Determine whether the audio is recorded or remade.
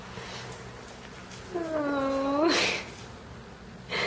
recorded